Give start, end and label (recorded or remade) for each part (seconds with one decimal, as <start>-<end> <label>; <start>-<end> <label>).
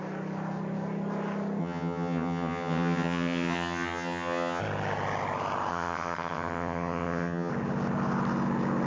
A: 0.0-1.6 recorded; 1.6-4.6 remade; 4.6-5.7 recorded; 5.7-7.5 remade; 7.5-8.9 recorded